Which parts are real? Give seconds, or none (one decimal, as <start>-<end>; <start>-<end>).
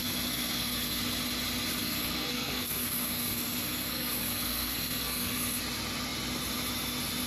1.0-1.8; 5.6-7.3